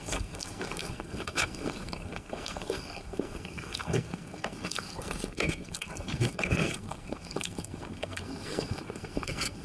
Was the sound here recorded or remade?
remade